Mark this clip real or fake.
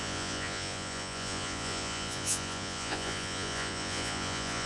fake